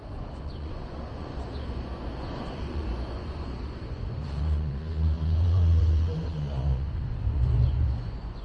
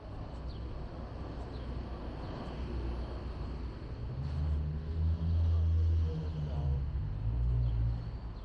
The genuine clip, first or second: second